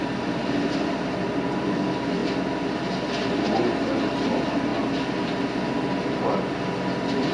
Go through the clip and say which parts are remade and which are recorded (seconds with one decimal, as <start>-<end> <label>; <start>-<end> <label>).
0.0-2.2 remade; 2.2-4.3 recorded; 4.3-4.7 remade; 4.7-6.6 recorded; 6.6-7.3 remade